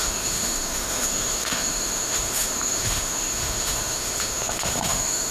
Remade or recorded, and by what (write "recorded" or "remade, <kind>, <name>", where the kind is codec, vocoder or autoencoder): remade, autoencoder, DAC-VAE